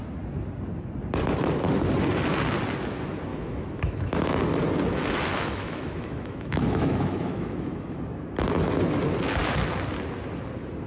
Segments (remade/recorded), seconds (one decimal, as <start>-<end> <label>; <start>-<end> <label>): 0.0-3.3 recorded; 3.3-4.4 remade; 4.4-5.3 recorded; 5.3-8.0 remade; 8.0-10.9 recorded